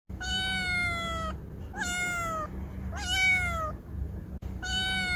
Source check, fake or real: real